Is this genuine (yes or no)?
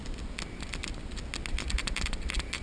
yes